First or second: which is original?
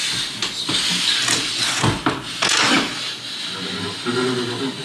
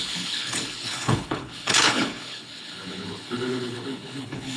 first